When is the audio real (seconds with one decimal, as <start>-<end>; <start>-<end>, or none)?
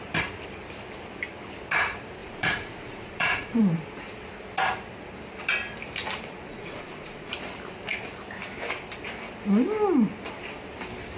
0.0-2.2; 3.6-6.5; 7.3-11.2